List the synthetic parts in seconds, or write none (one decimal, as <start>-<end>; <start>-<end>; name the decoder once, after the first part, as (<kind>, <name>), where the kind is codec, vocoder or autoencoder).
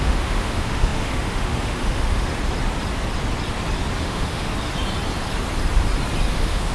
0.0-2.3 (autoencoder, DAC-VAE); 4.0-4.5; 6.3-6.7